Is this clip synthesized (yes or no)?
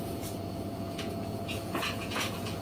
yes